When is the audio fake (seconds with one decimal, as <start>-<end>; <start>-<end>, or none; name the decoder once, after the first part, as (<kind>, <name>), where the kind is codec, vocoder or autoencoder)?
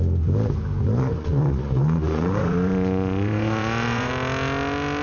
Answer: 1.1-4.1 (vocoder, Vocos)